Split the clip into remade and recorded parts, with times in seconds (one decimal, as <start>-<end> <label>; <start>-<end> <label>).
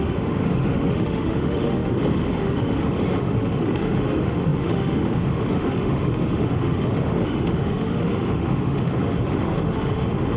0.0-10.4 remade